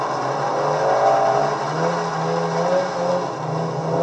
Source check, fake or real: real